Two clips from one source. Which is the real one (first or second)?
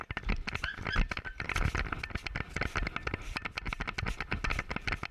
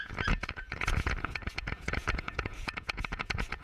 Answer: first